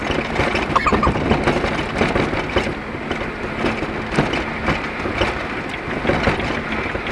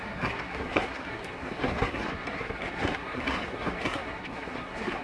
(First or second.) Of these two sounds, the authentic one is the first